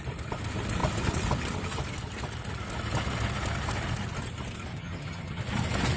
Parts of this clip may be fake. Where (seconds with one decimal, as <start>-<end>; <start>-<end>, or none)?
4.7-5.4